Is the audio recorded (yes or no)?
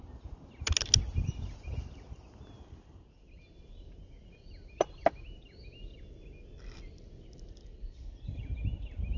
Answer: yes